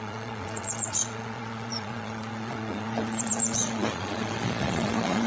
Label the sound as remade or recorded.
remade